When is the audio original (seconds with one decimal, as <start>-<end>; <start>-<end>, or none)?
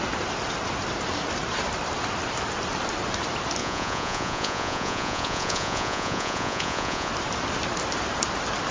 0.0-3.6; 7.1-8.7